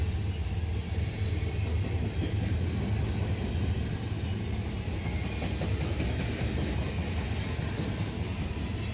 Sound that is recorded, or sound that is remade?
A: recorded